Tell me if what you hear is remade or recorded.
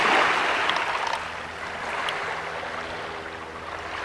recorded